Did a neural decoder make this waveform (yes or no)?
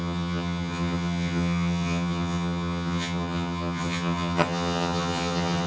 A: yes